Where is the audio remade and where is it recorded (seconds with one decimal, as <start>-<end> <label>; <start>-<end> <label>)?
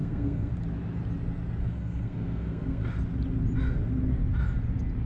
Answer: 0.0-0.5 remade; 0.5-1.6 recorded; 1.6-2.9 remade; 2.9-5.1 recorded